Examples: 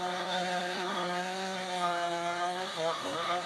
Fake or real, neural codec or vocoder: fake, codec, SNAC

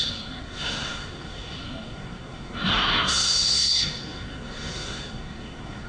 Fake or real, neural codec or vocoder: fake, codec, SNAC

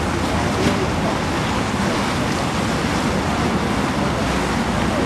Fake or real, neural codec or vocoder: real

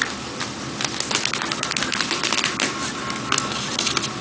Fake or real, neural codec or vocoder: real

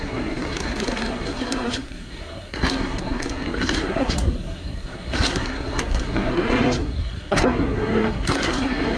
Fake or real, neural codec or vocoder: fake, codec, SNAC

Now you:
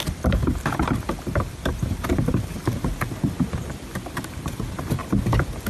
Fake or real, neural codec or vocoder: real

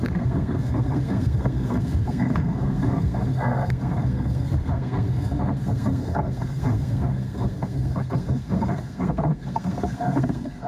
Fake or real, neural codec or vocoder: fake, codec, SNAC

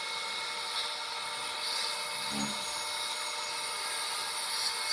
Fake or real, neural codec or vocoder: real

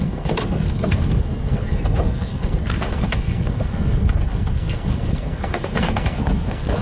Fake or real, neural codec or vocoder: fake, codec, SNAC